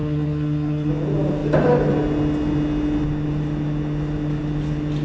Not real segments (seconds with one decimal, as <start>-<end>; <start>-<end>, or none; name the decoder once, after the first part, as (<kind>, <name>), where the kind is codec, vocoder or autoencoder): 0.0-0.9 (codec, SNAC)